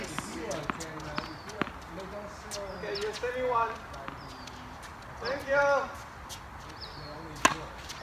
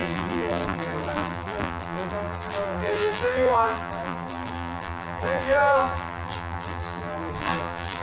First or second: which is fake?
second